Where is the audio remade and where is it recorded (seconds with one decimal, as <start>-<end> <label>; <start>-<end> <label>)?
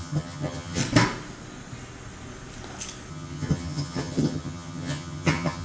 0.0-0.8 remade; 0.8-3.1 recorded; 3.1-5.6 remade